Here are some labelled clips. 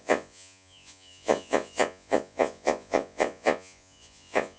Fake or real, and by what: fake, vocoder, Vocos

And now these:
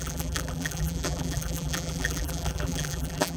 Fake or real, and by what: fake, vocoder, BigVGAN v2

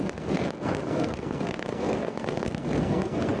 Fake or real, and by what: fake, codec, SNAC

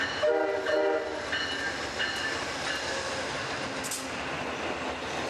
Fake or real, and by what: real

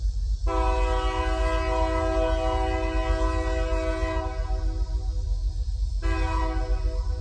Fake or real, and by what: real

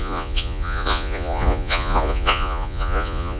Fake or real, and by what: fake, vocoder, Vocos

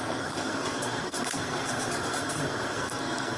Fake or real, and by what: fake, codec, SNAC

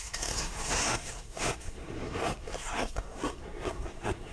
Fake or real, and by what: fake, codec, SNAC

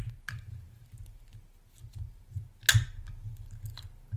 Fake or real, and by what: real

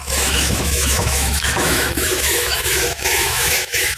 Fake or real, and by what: fake, autoencoder, DAC-VAE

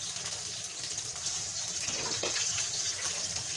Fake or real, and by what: real